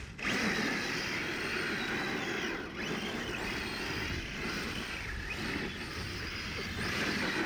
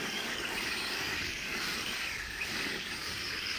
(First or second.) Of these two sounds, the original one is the first